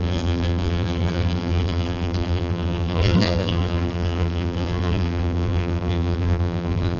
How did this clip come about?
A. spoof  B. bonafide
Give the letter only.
A